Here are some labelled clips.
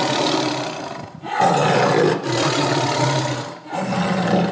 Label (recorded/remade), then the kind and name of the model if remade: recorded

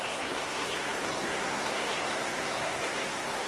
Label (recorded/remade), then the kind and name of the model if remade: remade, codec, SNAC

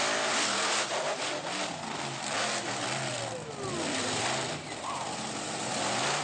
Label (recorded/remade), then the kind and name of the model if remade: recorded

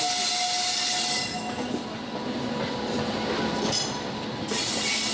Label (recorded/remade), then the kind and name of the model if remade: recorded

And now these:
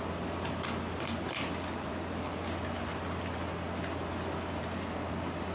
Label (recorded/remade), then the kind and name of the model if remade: recorded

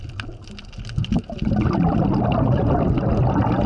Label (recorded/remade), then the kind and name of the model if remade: recorded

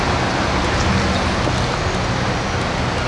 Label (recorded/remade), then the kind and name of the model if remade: recorded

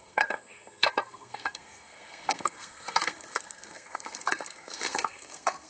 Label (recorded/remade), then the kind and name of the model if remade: remade, codec, SNAC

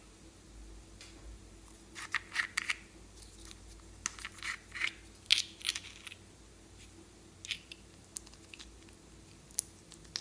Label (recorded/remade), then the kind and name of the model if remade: recorded